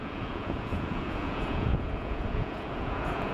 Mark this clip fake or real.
fake